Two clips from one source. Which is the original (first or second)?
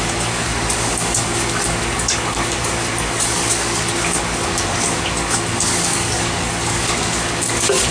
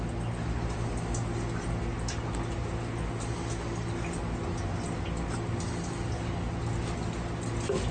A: second